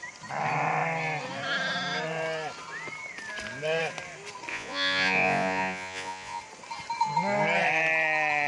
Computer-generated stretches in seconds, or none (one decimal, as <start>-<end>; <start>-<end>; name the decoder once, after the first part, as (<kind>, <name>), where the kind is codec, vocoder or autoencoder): 4.5-6.4 (vocoder, Vocos)